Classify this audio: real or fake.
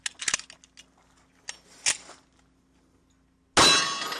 real